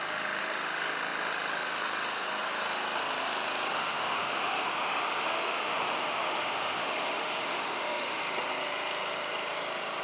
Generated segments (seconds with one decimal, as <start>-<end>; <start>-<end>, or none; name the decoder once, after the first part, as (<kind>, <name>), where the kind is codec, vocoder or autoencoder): 3.7-8.2 (autoencoder, DAC-VAE)